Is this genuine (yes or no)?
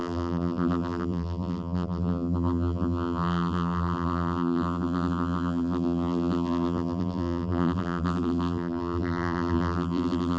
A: no